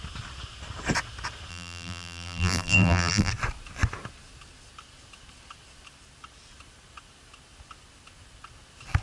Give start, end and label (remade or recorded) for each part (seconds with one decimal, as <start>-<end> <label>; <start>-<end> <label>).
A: 0.0-1.5 recorded; 1.5-3.3 remade; 3.3-9.0 recorded